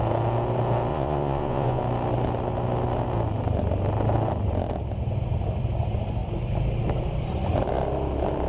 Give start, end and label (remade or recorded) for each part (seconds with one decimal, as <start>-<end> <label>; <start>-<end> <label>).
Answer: 0.0-0.9 recorded; 0.9-1.8 remade; 1.8-8.5 recorded